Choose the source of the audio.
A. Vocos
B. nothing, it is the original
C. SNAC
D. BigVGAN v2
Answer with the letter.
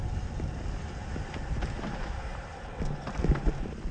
B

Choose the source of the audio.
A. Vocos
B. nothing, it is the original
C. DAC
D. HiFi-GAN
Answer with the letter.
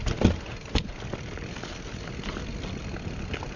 B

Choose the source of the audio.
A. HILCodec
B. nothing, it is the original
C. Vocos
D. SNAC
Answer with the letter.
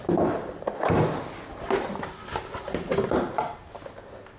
B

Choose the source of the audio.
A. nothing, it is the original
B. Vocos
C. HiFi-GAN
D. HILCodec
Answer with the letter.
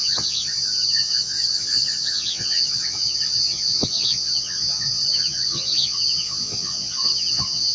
B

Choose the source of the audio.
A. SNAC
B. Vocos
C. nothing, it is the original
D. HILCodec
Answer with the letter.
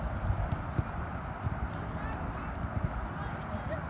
C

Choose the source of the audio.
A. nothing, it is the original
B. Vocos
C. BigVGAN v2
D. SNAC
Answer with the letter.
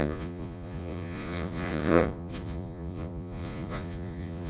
B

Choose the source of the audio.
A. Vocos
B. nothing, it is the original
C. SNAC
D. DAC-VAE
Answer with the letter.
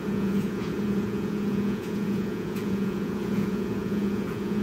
A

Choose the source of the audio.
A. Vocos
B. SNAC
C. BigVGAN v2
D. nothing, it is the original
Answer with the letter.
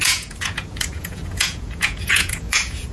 A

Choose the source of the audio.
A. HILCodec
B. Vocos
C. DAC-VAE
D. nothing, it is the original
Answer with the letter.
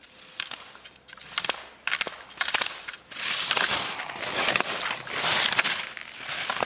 D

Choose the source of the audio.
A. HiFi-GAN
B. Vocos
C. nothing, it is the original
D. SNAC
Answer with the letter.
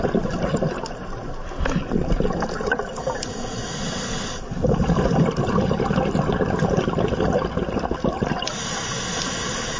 C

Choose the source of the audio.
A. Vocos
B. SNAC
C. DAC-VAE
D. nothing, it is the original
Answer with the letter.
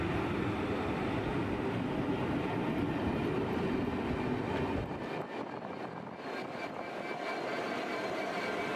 D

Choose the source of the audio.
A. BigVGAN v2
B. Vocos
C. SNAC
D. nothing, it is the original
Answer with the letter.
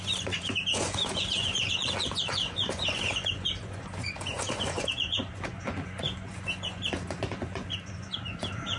B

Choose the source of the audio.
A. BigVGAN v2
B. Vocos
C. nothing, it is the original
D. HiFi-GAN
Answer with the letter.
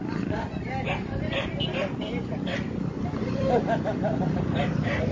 C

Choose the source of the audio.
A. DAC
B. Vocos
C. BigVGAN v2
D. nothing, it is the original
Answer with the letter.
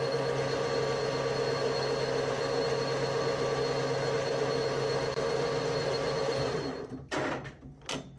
D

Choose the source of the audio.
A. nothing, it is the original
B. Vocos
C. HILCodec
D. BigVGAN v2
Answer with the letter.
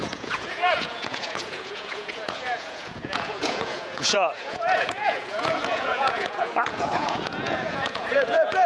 B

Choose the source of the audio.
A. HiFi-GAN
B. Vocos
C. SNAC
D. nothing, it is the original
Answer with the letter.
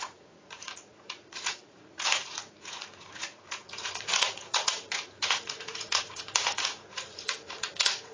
B